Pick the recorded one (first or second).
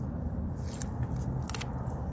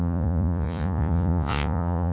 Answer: first